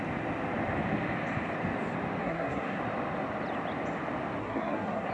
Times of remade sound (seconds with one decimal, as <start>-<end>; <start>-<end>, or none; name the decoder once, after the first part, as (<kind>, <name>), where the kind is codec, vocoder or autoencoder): 2.2-2.8 (codec, SNAC); 4.4-5.1